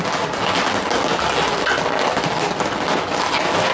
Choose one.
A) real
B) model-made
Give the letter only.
A